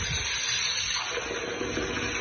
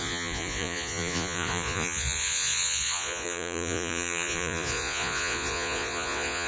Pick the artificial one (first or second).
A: second